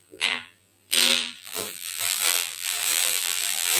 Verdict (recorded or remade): remade